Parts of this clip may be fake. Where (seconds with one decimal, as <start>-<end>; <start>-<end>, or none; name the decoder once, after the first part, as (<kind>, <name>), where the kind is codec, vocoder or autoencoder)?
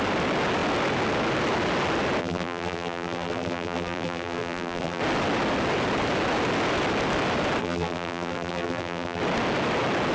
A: 2.2-5.0 (vocoder, BigVGAN v2); 7.6-9.2